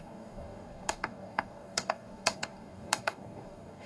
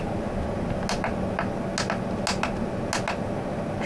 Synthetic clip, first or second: first